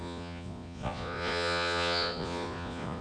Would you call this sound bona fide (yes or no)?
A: no